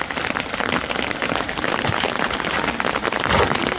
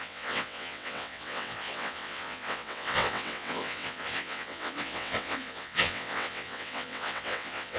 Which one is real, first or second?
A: first